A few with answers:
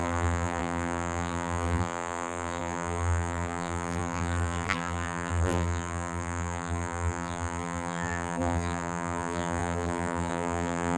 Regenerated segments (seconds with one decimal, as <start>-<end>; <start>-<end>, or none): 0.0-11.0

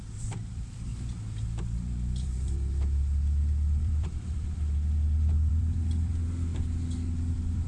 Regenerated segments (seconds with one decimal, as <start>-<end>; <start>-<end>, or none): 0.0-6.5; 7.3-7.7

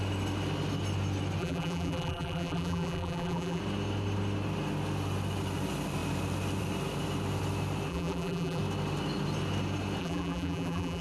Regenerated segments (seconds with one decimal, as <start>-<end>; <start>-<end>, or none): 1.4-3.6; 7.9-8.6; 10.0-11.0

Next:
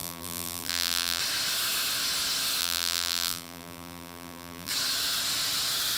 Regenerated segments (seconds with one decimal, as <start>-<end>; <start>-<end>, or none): 0.0-1.2; 2.6-4.7

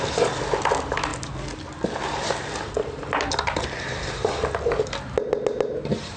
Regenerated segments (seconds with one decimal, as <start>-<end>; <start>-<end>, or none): none